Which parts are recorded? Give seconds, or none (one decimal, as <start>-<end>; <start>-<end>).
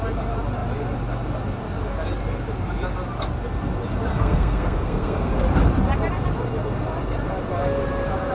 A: 0.0-4.1; 5.3-8.3